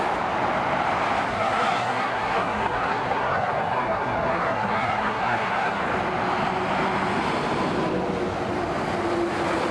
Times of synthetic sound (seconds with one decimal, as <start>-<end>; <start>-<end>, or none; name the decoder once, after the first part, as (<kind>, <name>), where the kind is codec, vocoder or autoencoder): 1.3-5.8 (codec, SNAC)